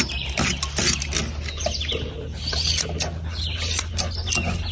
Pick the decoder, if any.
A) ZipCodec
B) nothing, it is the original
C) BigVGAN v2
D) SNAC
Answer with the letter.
B